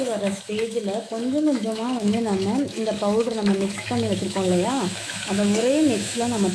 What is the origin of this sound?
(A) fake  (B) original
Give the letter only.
A